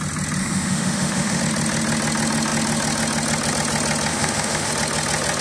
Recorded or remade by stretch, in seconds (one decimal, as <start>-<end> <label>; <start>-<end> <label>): 0.0-0.4 recorded; 0.4-1.4 remade; 1.4-4.1 recorded; 4.1-4.7 remade; 4.7-5.4 recorded